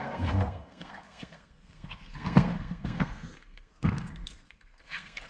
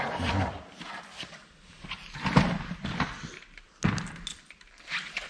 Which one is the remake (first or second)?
first